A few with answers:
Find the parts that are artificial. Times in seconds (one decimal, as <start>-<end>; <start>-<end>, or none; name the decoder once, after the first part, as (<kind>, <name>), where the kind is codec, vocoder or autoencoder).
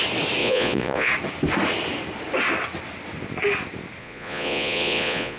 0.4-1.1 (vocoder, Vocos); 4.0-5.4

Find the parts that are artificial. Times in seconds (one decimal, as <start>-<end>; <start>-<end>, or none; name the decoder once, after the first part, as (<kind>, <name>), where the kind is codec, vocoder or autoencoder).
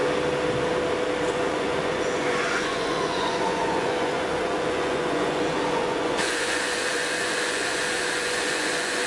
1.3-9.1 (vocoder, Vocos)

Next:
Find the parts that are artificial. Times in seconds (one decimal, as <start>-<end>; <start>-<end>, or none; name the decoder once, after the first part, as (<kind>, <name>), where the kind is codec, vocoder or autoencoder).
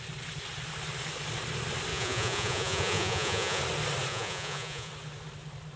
1.9-3.6 (vocoder, Vocos); 4.1-4.9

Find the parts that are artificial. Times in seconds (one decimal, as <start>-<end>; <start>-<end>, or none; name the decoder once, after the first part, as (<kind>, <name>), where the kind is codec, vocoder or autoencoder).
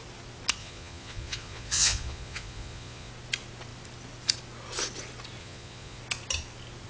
0.6-3.1 (vocoder, Vocos); 5.4-6.0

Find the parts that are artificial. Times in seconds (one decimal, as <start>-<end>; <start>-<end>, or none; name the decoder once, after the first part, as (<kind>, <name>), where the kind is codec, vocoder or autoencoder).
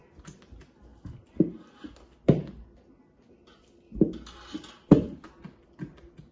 none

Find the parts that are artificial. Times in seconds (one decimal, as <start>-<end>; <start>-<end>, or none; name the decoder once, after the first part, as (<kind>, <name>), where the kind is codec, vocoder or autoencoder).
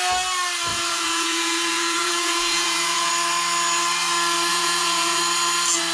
0.7-3.1 (vocoder, Vocos); 4.5-5.2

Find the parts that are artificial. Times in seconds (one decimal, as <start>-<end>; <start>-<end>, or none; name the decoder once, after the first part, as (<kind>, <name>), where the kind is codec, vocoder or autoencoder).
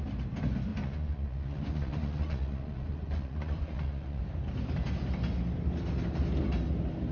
0.7-4.2 (vocoder, Vocos)